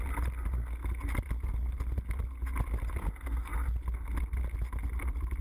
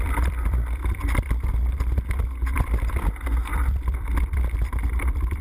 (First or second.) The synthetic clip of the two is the second